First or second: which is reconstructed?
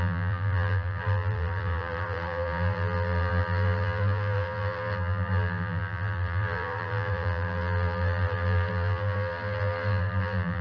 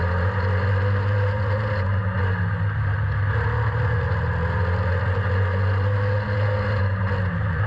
first